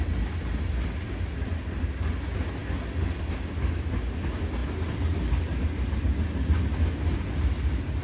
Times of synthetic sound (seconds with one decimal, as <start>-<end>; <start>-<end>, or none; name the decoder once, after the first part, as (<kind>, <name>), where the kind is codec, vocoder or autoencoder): none